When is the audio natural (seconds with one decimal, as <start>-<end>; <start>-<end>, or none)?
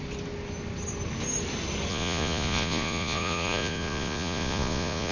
0.0-1.9